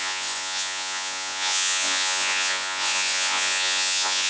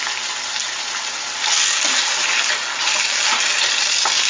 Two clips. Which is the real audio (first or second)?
second